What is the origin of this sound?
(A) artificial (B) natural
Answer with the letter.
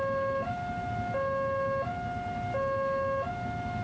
B